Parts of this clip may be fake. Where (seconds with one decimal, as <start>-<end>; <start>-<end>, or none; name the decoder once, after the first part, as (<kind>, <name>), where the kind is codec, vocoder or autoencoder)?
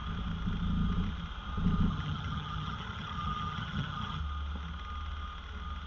1.9-4.2 (vocoder, HiFi-GAN)